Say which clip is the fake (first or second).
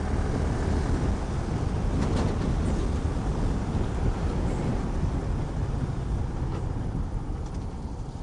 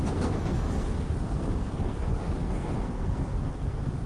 second